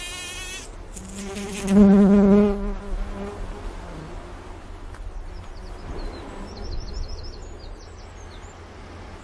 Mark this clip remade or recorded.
recorded